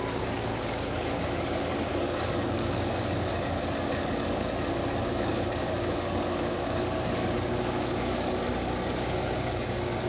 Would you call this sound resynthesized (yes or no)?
yes